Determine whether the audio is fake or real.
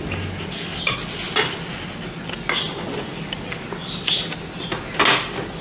real